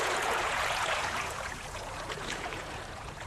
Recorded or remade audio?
remade